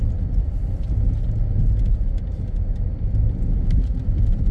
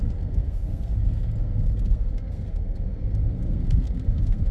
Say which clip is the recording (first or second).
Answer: first